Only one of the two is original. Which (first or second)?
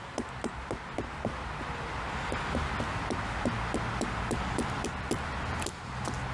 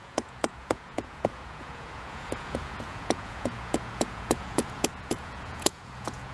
first